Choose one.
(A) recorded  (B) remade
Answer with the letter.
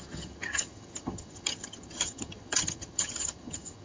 B